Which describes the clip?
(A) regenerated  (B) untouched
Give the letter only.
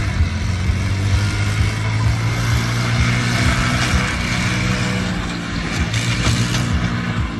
B